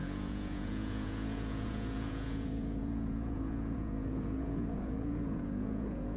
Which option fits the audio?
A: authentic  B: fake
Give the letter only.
B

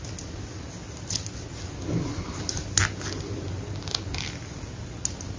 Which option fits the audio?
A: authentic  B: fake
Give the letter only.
A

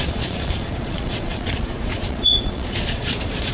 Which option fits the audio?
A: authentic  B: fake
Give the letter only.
B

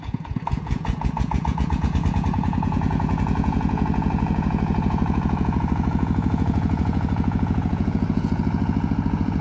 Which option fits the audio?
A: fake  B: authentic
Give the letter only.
A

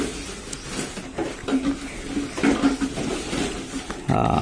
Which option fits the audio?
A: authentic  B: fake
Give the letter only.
A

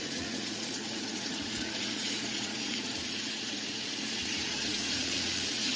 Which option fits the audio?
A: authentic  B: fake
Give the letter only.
B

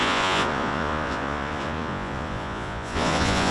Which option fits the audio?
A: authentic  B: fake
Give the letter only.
B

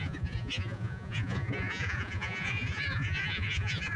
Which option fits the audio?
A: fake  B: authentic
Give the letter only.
A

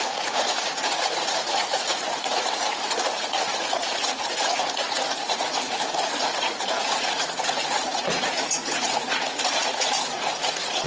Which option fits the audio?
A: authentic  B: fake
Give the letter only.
B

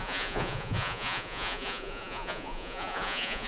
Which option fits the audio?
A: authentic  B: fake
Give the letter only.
B